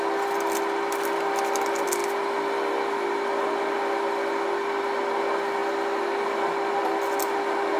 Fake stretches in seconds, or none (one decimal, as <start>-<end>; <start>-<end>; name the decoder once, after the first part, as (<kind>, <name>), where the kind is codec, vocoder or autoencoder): none